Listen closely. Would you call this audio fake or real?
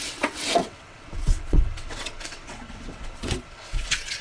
fake